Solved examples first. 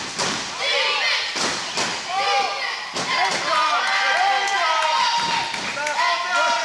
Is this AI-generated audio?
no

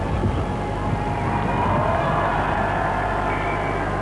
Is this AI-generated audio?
no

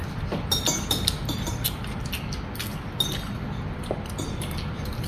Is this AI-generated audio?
no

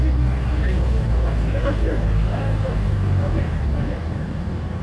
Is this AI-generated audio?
yes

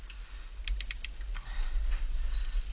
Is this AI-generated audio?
no